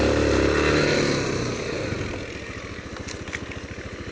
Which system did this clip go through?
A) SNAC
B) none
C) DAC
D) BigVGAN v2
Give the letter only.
B